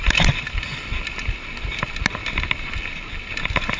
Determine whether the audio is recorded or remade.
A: recorded